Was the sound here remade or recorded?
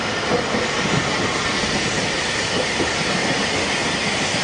recorded